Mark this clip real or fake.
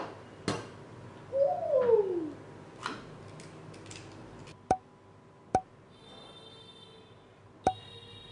real